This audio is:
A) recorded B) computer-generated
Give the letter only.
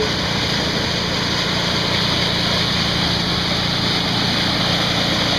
A